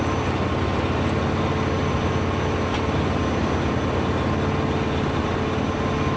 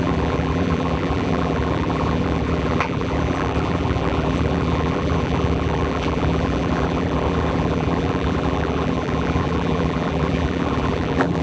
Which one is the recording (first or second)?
first